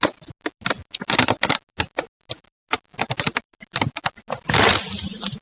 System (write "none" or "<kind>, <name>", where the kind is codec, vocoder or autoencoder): none